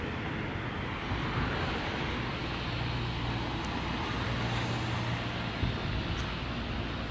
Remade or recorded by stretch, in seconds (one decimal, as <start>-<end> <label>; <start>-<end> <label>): 0.0-7.1 recorded